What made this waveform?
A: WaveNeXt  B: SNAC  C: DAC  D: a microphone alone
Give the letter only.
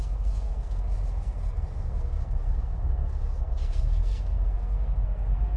B